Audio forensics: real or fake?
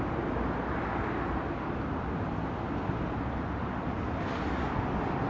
real